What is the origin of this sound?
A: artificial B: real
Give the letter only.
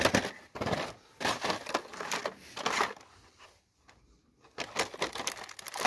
B